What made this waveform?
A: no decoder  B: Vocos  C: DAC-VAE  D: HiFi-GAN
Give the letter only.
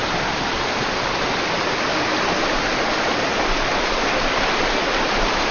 A